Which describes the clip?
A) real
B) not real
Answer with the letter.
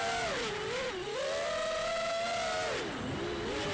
A